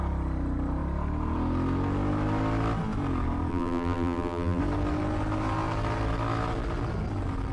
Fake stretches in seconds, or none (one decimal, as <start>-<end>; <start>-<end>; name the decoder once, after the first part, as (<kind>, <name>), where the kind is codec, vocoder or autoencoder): 3.5-4.6 (vocoder, BigVGAN v2)